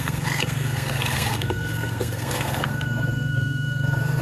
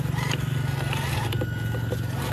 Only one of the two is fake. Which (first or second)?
first